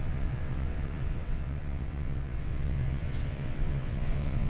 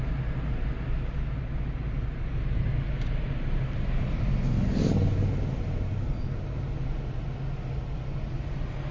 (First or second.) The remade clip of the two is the first